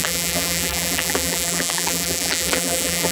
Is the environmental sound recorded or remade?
remade